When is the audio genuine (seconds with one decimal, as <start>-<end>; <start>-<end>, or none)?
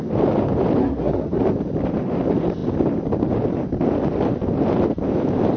0.0-0.8; 1.4-5.6